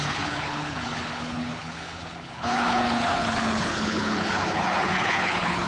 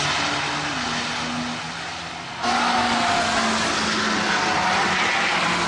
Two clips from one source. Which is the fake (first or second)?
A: first